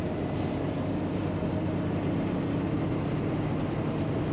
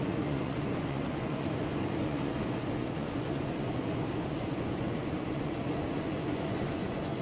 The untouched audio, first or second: first